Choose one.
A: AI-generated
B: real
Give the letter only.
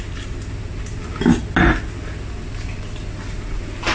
B